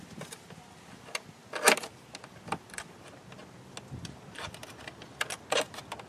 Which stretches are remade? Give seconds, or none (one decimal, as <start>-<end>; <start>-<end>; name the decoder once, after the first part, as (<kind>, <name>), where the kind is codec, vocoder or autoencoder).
none